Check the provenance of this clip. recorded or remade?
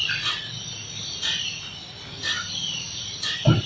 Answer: recorded